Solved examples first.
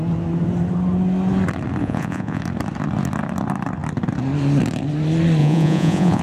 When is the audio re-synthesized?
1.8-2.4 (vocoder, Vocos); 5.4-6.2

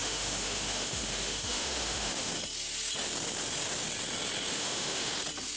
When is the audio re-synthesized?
0.0-2.3 (autoencoder, DAC-VAE); 4.5-5.1

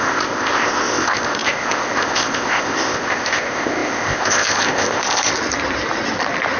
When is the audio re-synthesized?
0.0-5.3 (codec, ZipCodec)

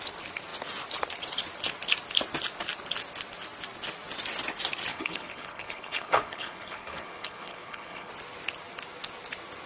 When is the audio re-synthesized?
4.9-8.1 (codec, HILCodec)

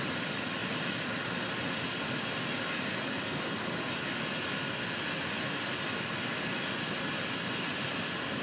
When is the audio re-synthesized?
none

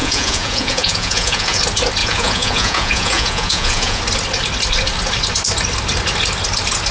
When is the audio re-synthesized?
0.0-1.6 (vocoder, Vocos); 2.0-4.0

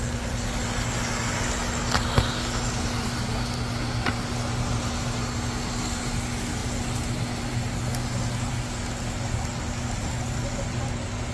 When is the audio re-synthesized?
none

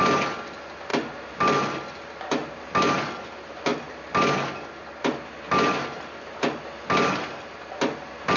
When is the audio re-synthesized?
none